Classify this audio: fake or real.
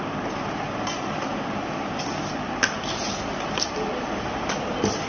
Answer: real